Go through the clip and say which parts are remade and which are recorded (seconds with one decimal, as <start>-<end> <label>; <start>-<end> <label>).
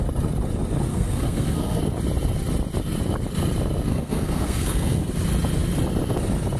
0.0-0.9 recorded; 0.9-1.8 remade; 1.8-3.9 recorded; 3.9-5.1 remade; 5.1-6.6 recorded